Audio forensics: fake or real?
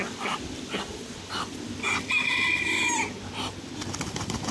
real